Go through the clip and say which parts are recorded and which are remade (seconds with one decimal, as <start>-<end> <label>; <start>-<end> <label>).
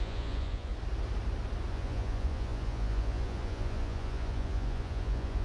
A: 0.0-0.7 remade; 0.7-1.7 recorded; 1.7-5.4 remade